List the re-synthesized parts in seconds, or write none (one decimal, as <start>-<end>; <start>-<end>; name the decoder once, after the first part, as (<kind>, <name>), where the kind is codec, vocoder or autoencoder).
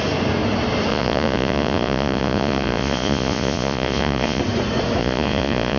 0.9-4.4 (vocoder, Vocos); 5.0-5.8